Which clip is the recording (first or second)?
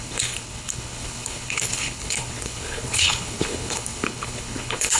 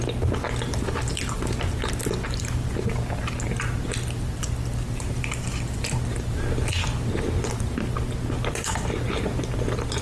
second